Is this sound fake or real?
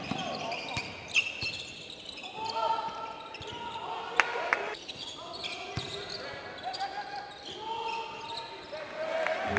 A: real